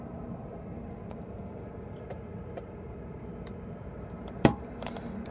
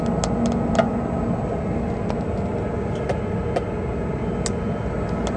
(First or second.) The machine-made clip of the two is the first